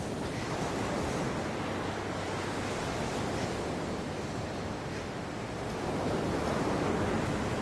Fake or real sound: real